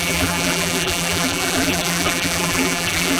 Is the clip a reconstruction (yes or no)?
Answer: yes